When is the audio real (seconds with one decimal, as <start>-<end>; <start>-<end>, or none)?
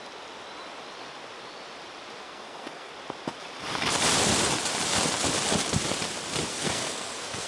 0.0-2.2; 2.9-6.5